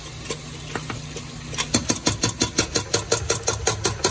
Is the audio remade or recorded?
recorded